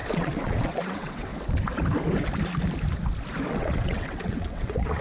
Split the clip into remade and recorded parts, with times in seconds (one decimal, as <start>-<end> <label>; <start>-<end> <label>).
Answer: 0.0-1.3 remade; 1.3-3.5 recorded; 3.5-5.0 remade